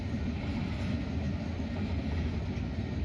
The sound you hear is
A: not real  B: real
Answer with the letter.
B